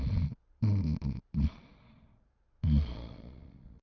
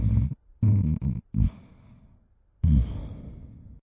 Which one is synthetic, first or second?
first